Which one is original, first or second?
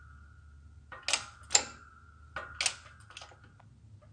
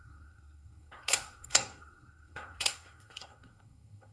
first